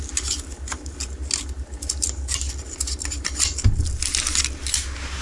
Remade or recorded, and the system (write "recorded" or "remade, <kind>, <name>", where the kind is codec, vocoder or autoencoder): recorded